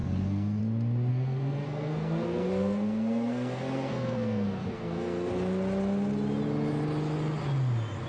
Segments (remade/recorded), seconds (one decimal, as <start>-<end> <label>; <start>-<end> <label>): 0.0-0.6 remade; 0.6-1.1 recorded; 1.1-5.3 remade; 5.3-8.1 recorded